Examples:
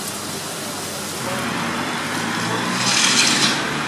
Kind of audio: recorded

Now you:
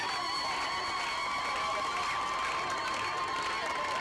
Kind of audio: recorded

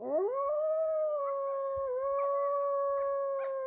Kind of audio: recorded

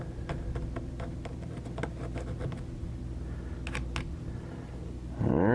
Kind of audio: recorded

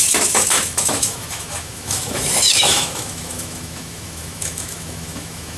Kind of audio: remade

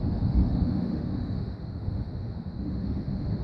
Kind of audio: remade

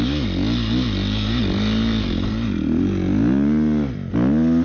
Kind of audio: recorded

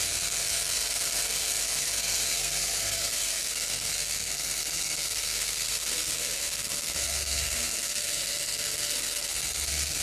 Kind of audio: remade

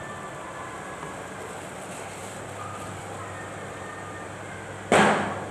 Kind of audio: recorded